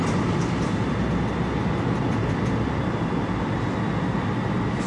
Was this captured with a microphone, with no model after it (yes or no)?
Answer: yes